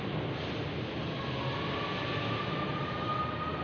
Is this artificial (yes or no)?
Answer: no